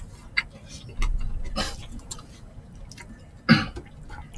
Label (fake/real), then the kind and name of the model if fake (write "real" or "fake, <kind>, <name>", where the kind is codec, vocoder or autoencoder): real